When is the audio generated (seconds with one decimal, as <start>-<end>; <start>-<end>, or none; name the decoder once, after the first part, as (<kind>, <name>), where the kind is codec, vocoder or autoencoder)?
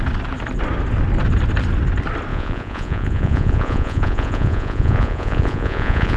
2.3-6.2 (vocoder, Vocos)